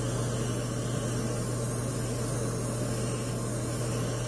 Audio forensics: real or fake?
real